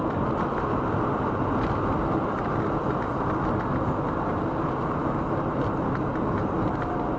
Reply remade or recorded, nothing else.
recorded